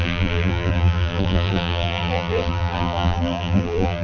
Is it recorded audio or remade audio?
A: remade